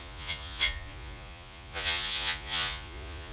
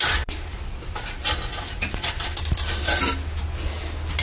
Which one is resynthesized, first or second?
first